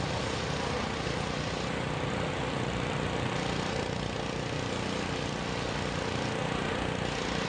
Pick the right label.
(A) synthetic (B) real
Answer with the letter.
B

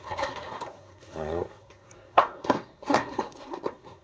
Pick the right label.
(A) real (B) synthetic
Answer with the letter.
B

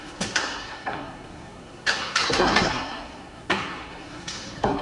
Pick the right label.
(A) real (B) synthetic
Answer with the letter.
B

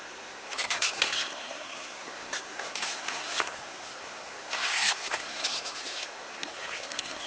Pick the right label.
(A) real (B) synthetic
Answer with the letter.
B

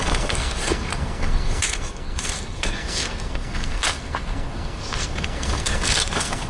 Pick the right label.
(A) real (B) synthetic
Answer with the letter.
B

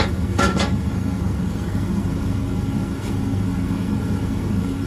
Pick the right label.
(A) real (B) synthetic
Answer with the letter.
B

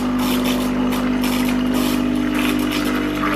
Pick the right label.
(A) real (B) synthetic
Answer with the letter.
A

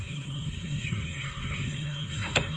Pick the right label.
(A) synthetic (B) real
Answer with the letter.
A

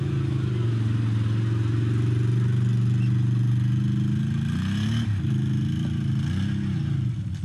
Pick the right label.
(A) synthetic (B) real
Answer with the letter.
B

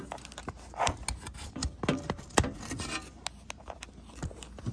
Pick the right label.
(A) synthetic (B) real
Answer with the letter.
B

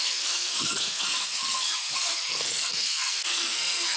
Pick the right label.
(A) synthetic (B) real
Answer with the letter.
A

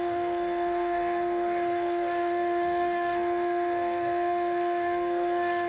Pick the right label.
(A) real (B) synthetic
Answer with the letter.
B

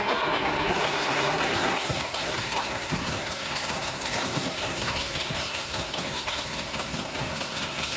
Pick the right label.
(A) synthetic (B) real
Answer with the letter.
A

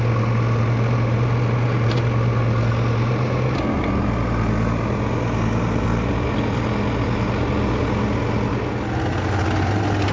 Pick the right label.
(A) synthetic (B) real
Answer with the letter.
B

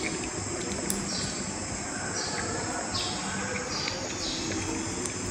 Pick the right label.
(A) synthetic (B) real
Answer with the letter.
B